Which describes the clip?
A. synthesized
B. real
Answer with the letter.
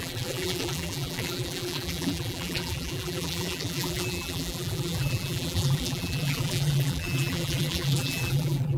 A